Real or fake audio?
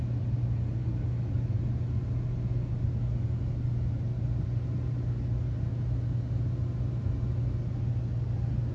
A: real